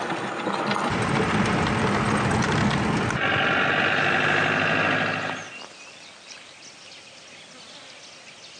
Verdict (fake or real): real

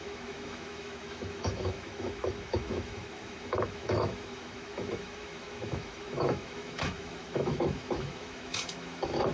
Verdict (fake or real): fake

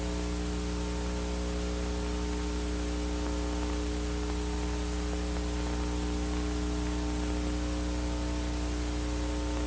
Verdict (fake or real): real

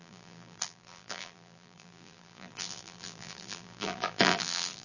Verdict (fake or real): fake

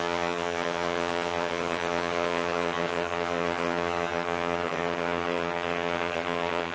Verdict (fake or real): fake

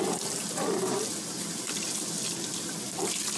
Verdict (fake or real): real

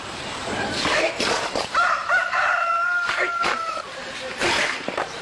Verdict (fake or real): fake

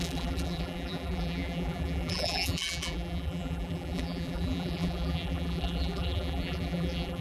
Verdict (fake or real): fake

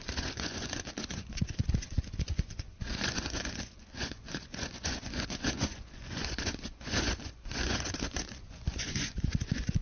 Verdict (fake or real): fake